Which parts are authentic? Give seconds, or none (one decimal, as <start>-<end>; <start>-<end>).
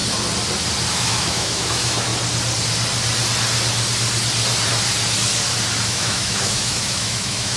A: 0.0-0.9; 2.1-5.9